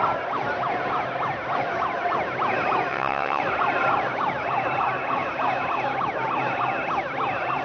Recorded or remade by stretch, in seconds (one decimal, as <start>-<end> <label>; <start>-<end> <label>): 0.0-2.9 recorded; 2.9-3.4 remade; 3.4-7.6 recorded